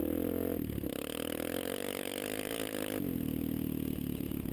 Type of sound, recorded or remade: remade